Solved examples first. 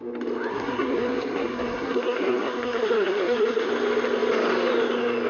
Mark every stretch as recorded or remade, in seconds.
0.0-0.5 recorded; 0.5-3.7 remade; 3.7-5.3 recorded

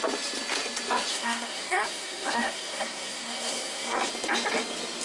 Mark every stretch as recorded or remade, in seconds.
0.0-1.1 recorded; 1.1-4.1 remade; 4.1-5.0 recorded

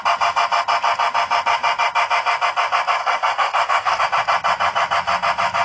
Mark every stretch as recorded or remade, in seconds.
0.0-3.0 recorded; 3.0-4.0 remade; 4.0-5.6 recorded

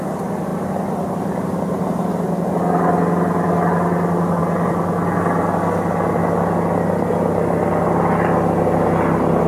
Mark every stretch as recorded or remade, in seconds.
0.0-0.5 recorded; 0.5-2.1 remade; 2.1-9.5 recorded

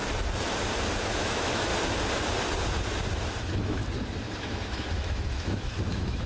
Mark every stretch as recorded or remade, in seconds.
0.0-1.1 recorded; 1.1-1.7 remade; 1.7-3.4 recorded; 3.4-3.8 remade; 3.8-4.4 recorded; 4.4-6.3 remade